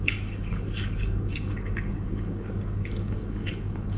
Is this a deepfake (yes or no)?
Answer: yes